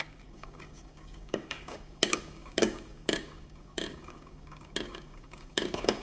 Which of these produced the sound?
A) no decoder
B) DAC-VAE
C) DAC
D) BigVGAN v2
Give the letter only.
C